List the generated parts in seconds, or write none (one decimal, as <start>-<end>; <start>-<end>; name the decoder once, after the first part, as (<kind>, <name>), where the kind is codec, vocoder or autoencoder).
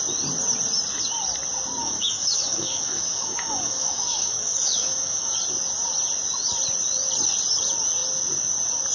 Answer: 1.8-5.3 (autoencoder, DAC-VAE)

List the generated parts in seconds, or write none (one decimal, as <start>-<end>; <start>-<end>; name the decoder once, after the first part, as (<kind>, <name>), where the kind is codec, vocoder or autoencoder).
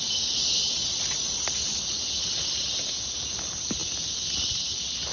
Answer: none